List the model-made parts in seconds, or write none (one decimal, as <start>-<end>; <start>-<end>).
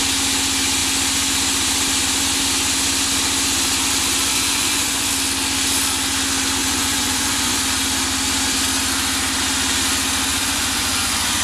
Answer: 4.3-5.1; 6.6-7.6; 10.3-11.4